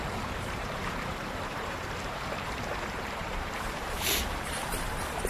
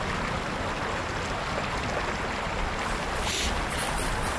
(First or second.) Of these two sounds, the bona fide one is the second